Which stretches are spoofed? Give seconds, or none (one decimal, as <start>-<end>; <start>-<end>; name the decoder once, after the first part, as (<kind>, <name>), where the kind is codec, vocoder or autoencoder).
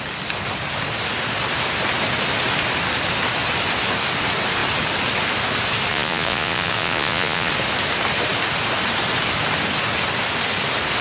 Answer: 5.9-7.5 (vocoder, Vocos)